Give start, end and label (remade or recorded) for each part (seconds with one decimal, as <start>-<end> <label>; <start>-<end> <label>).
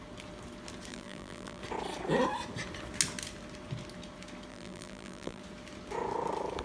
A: 0.0-0.9 recorded; 0.9-1.6 remade; 1.6-4.5 recorded; 4.5-5.4 remade; 5.4-6.6 recorded